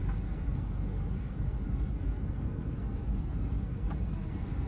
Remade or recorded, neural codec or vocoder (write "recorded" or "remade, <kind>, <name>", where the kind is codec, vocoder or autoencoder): remade, codec, SNAC